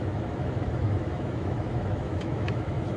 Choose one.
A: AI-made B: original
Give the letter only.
A